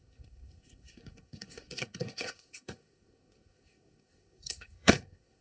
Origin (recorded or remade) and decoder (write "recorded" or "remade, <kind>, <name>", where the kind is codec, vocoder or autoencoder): remade, codec, SNAC